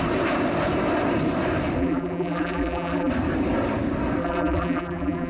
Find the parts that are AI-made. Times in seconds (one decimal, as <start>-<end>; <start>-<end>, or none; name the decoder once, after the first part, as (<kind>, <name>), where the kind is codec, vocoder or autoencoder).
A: 1.8-3.1 (vocoder, BigVGAN v2); 4.2-5.3